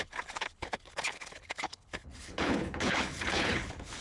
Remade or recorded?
remade